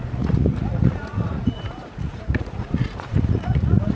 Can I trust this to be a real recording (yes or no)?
no